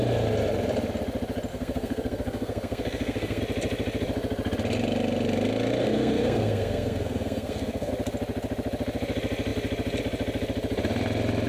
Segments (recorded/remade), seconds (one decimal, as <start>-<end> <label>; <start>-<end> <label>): 0.0-1.5 recorded; 1.5-3.4 remade; 3.4-5.8 recorded; 5.8-7.9 remade; 7.9-11.5 recorded